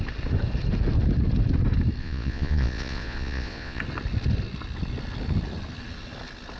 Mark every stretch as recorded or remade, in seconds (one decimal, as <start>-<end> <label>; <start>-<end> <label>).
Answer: 0.0-2.0 recorded; 2.0-3.8 remade; 3.8-6.6 recorded